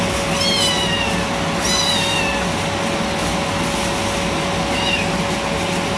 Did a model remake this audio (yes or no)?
no